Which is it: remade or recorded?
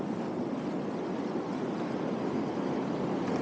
recorded